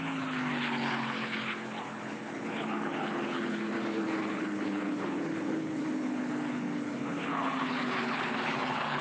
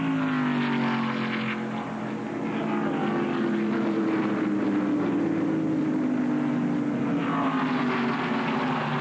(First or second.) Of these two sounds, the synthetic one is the first